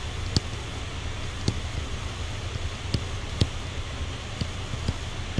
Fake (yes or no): no